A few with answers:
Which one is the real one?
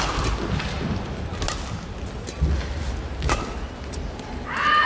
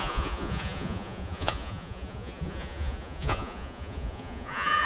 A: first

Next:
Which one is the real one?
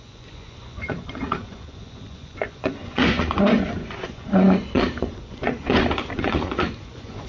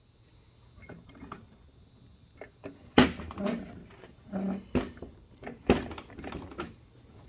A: second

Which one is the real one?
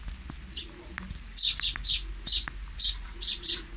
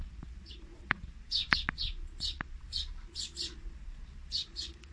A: first